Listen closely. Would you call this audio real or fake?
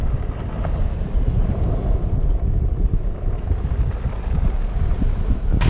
real